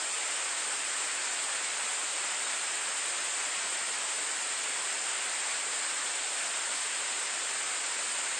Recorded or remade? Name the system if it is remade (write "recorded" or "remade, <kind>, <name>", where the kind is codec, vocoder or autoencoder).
recorded